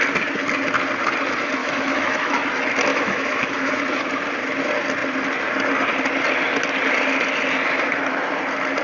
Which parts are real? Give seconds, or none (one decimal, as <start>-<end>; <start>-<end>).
0.0-1.6; 2.4-2.9; 3.8-8.8